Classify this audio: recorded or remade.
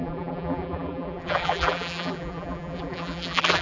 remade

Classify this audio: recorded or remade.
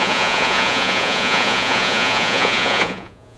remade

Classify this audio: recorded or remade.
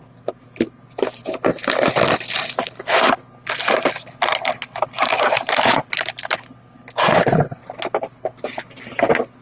recorded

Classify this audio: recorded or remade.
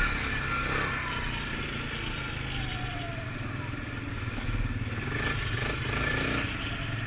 recorded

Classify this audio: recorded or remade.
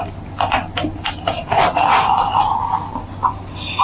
recorded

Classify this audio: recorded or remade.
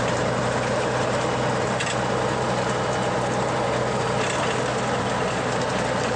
recorded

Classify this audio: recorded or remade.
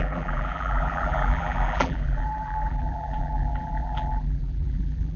remade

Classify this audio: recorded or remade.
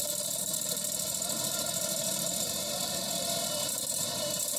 remade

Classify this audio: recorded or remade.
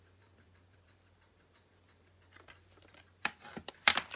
remade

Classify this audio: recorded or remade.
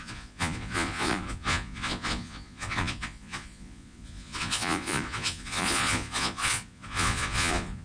remade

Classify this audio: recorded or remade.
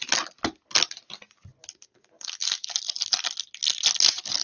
recorded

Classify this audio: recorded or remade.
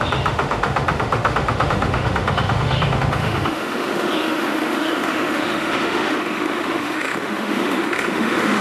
remade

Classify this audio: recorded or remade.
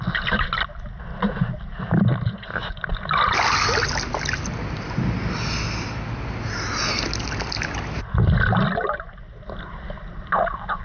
recorded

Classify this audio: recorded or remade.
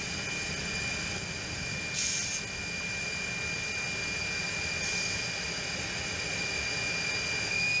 recorded